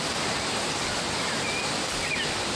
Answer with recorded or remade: recorded